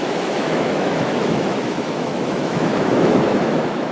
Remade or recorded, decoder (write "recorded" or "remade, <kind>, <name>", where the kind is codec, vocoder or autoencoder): remade, autoencoder, DAC-VAE